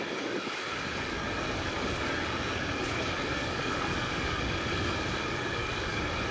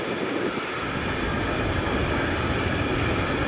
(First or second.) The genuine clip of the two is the second